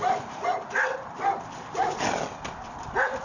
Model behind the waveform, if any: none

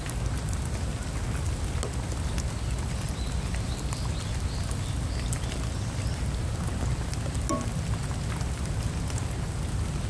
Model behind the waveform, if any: none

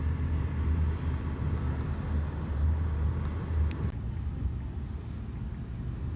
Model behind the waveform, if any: none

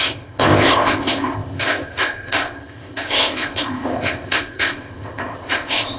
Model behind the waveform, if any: codec, ZipCodec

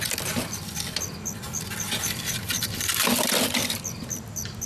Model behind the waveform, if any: none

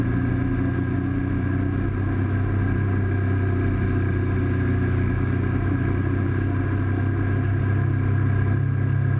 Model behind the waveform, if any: none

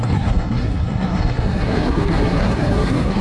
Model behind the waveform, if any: codec, SNAC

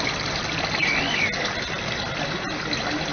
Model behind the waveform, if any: none